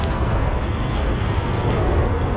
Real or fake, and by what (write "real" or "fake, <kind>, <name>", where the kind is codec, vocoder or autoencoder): fake, codec, SNAC